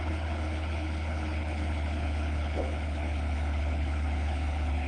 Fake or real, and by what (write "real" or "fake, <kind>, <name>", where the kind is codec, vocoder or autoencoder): fake, codec, HILCodec